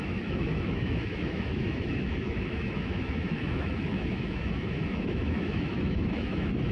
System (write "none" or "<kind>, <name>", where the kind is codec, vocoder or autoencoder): autoencoder, DAC-VAE